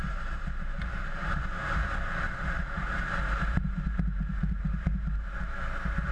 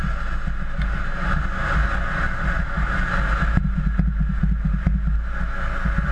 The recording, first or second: second